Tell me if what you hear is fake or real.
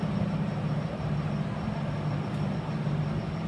real